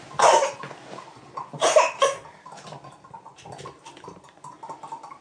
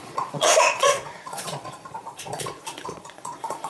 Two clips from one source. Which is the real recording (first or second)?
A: first